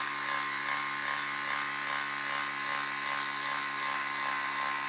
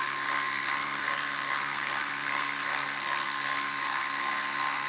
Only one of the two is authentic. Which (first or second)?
first